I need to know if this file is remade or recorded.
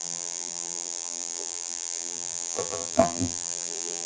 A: remade